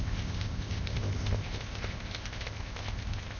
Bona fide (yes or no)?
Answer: no